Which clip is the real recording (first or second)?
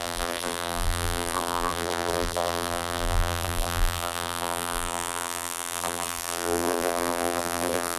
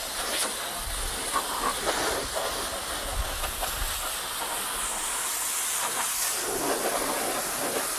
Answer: second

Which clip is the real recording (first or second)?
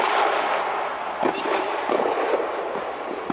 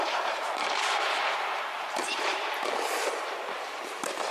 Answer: first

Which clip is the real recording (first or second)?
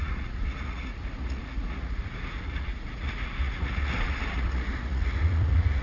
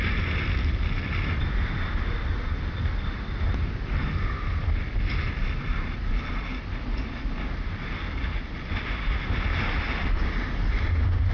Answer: second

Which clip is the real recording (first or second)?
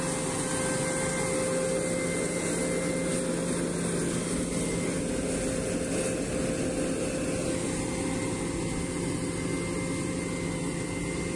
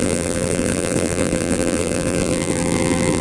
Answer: first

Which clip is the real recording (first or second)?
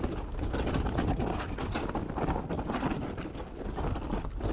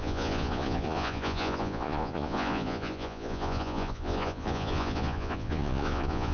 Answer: first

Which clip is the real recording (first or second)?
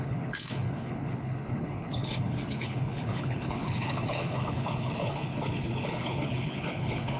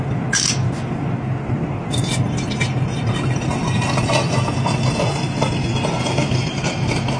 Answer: second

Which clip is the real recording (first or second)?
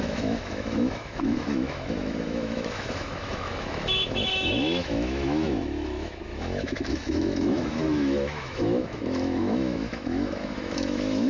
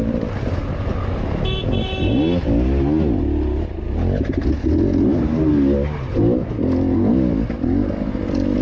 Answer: second